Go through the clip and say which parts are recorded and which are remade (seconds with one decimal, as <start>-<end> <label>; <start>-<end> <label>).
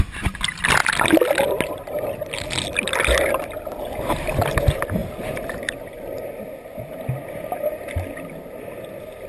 0.0-9.3 recorded